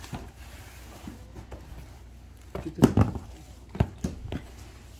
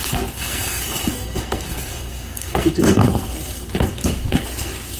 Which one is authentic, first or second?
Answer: first